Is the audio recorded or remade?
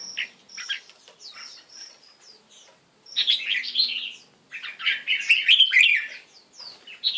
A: recorded